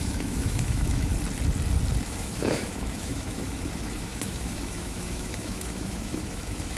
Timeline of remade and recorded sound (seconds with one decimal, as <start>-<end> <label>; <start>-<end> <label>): 0.0-1.1 remade; 1.1-2.0 recorded; 2.0-6.8 remade